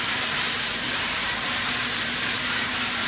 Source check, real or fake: fake